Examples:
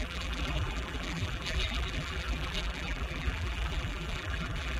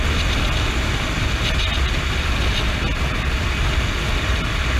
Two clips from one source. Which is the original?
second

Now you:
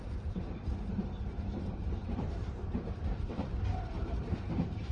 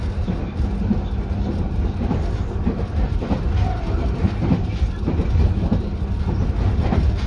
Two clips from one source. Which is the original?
second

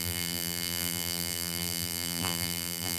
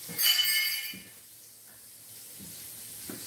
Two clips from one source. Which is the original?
second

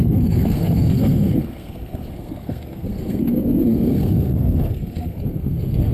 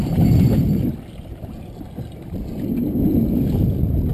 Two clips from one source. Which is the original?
second